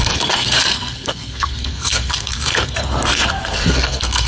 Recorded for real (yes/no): no